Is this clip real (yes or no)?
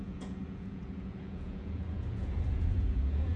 no